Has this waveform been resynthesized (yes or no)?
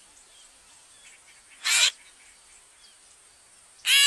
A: no